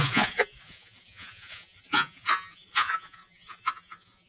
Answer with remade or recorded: remade